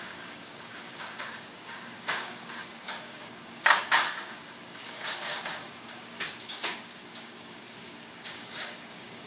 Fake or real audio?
fake